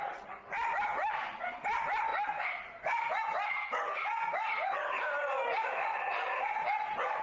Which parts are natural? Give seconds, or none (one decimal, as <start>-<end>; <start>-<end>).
0.0-7.2

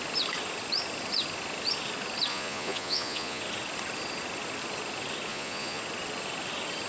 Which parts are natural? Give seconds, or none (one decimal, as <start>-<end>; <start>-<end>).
0.0-2.3; 3.4-5.3; 5.8-6.9

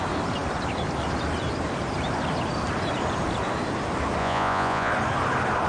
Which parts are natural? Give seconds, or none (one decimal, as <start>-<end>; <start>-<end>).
0.0-4.2; 4.9-5.7

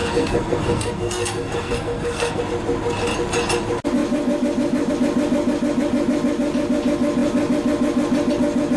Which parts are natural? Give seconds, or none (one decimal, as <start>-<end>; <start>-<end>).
2.4-8.8